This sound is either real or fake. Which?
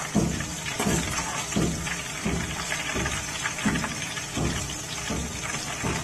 real